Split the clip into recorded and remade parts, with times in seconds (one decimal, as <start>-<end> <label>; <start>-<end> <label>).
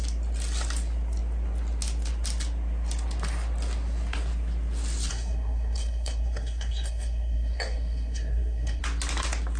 0.0-5.1 recorded; 5.1-8.8 remade; 8.8-9.6 recorded